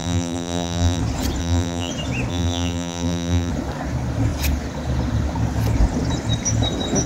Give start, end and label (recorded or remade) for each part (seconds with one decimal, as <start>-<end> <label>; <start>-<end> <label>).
0.0-1.0 remade; 1.0-1.4 recorded; 1.4-1.9 remade; 1.9-2.3 recorded; 2.3-3.5 remade; 3.5-7.1 recorded